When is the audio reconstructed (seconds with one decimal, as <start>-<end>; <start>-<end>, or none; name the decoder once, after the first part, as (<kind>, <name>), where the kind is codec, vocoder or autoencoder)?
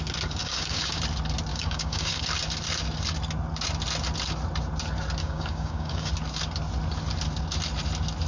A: 0.4-1.0 (codec, DAC); 1.5-2.2; 5.2-6.1